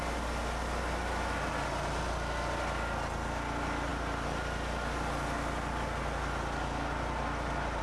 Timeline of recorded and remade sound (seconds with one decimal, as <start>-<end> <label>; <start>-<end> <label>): 0.0-7.8 recorded